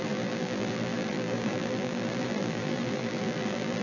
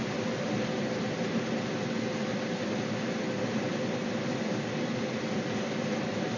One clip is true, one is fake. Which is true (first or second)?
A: second